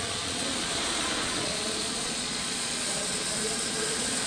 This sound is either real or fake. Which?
fake